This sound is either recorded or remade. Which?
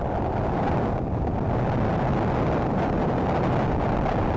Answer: remade